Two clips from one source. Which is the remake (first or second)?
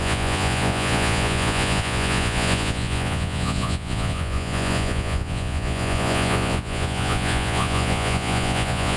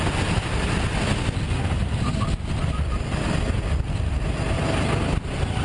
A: first